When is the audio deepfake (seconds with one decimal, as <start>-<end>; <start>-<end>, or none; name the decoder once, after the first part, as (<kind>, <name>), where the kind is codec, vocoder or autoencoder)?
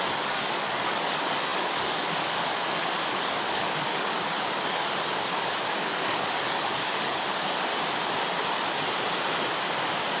0.0-7.7 (codec, DAC)